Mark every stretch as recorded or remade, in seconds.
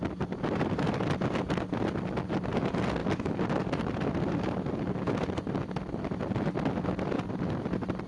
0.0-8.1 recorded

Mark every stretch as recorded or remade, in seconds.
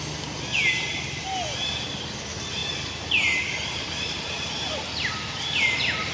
0.0-6.1 recorded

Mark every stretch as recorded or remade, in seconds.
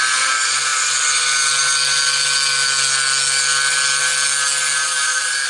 0.0-5.5 recorded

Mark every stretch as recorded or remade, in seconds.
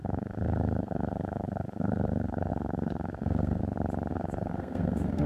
0.0-3.6 remade; 3.6-4.1 recorded; 4.1-5.3 remade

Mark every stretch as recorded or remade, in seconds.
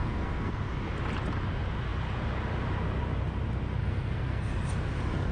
0.0-0.7 remade; 0.7-3.8 recorded; 3.8-4.5 remade; 4.5-5.3 recorded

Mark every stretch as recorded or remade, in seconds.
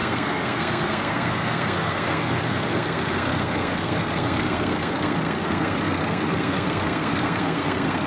0.0-8.1 remade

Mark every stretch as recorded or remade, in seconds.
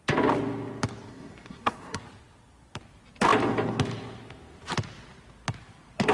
0.0-1.1 recorded; 1.1-2.0 remade; 2.0-6.1 recorded